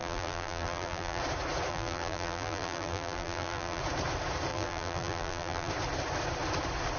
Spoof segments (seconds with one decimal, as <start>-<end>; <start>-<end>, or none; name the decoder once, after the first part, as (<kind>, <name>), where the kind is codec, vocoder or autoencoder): 0.0-1.2 (vocoder, BigVGAN v2); 1.7-3.8; 4.5-5.7